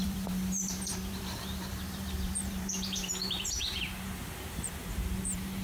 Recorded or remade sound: remade